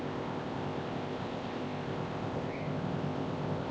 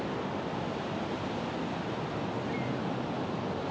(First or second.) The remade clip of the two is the first